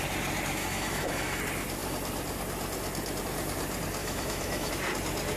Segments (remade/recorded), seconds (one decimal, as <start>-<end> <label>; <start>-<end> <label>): 0.0-0.6 recorded; 0.6-1.4 remade; 1.4-4.0 recorded; 4.0-4.7 remade; 4.7-5.4 recorded